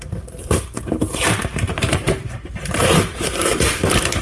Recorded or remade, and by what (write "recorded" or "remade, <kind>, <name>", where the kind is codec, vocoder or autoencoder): remade, vocoder, BigVGAN v2